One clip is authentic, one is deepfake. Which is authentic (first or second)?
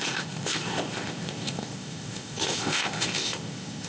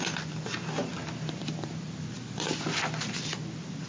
second